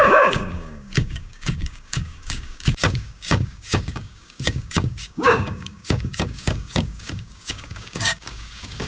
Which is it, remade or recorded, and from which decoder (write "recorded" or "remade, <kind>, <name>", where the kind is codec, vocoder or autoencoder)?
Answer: remade, codec, DAC